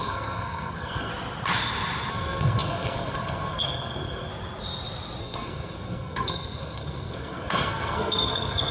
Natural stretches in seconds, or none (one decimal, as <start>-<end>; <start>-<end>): 1.1-2.1; 4.3-5.2